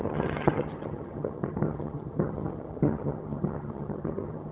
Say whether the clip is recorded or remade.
remade